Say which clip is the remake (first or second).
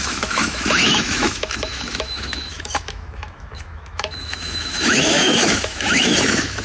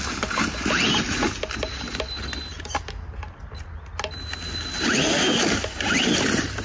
first